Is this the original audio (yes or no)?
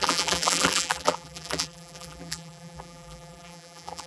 no